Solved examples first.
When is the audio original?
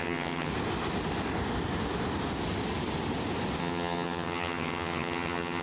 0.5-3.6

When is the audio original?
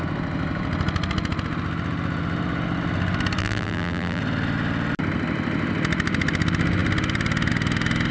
0.0-3.4; 4.2-8.1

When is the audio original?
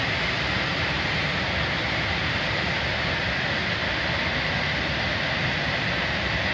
0.0-0.7; 3.2-6.5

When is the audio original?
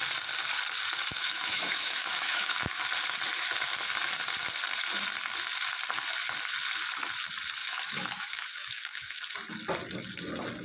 0.0-1.1; 2.8-7.6; 9.2-10.6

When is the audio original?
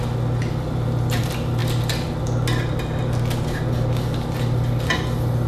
0.0-5.5